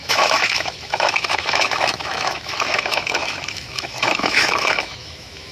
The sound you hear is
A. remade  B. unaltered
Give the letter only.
A